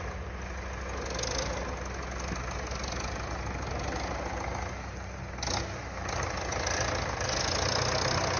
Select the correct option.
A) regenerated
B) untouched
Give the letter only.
B